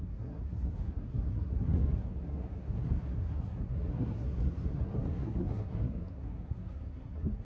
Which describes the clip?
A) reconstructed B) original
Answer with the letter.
A